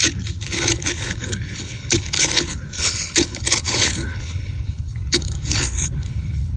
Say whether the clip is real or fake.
fake